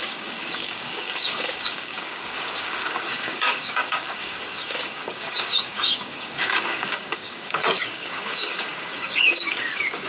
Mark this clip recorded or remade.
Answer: remade